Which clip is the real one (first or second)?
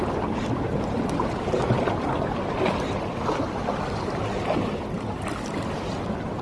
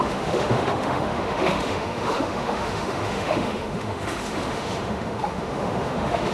first